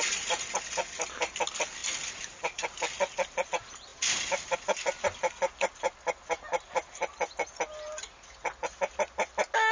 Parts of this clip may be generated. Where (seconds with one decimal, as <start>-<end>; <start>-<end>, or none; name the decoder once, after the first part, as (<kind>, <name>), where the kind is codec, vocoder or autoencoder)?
1.8-3.5 (vocoder, BigVGAN v2)